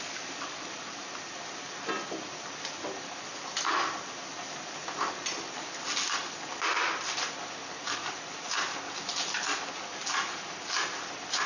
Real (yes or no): yes